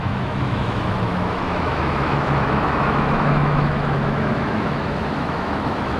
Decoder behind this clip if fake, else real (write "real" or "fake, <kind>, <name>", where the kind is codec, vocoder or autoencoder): fake, autoencoder, DAC-VAE